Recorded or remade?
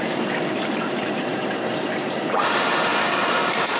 remade